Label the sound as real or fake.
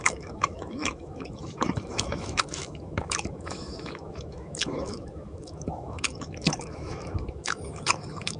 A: fake